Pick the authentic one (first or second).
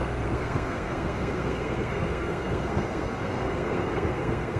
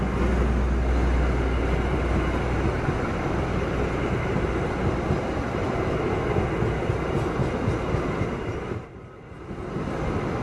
second